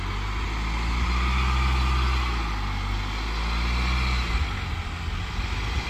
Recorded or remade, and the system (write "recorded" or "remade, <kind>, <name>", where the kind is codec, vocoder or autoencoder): recorded